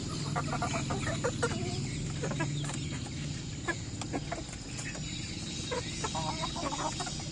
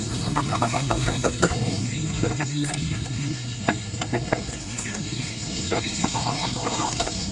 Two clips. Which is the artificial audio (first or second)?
second